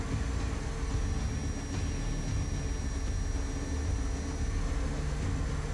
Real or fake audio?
real